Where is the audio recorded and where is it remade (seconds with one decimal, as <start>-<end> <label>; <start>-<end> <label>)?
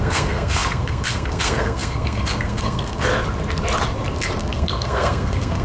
0.0-3.1 remade; 3.1-4.4 recorded; 4.4-5.6 remade